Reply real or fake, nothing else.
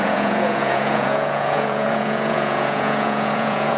fake